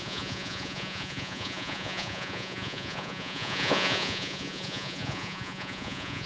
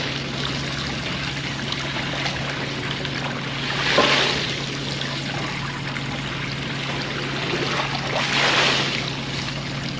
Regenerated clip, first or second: first